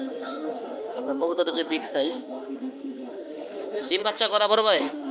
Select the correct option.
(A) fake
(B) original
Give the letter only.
A